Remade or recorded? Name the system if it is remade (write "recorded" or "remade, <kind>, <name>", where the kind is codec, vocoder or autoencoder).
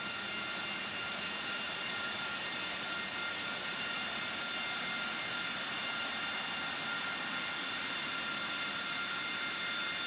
recorded